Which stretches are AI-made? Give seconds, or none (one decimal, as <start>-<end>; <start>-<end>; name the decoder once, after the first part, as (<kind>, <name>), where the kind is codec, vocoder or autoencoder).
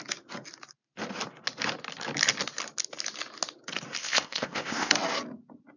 4.0-4.9 (codec, ZipCodec)